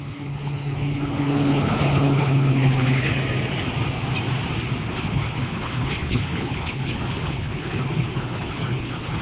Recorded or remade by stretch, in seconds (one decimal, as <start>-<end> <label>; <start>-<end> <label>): 0.0-3.2 remade; 3.2-4.9 recorded; 4.9-9.2 remade